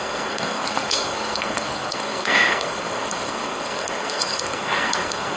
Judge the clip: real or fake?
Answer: fake